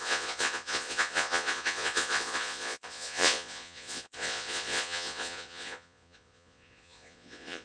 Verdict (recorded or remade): remade